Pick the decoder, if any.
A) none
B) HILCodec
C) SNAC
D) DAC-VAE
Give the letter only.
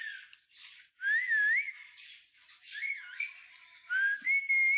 A